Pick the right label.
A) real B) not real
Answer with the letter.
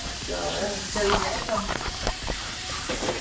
B